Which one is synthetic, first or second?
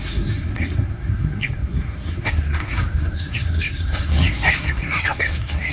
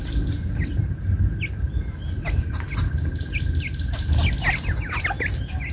first